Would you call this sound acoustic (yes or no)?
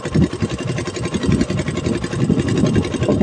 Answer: yes